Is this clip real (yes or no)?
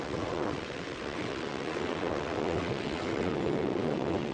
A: no